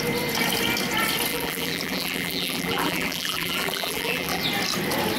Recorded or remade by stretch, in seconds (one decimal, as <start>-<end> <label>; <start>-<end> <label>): 0.0-1.3 recorded; 1.3-4.4 remade; 4.4-5.2 recorded